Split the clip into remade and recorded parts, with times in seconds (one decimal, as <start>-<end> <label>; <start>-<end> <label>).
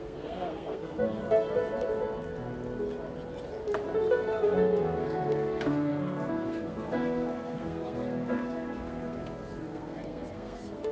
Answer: 0.0-1.2 remade; 1.2-4.1 recorded; 4.1-10.9 remade